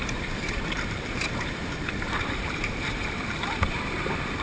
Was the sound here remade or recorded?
remade